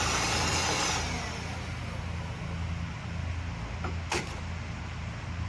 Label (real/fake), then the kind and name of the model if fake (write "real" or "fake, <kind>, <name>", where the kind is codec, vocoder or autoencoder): real